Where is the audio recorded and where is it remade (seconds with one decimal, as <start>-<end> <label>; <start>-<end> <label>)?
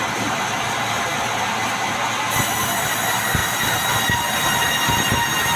0.0-3.4 recorded; 3.4-4.0 remade; 4.0-5.6 recorded